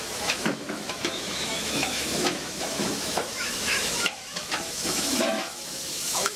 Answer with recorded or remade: remade